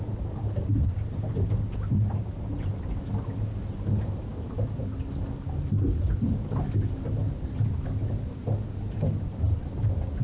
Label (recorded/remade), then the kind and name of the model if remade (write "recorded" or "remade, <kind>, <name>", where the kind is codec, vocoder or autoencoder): recorded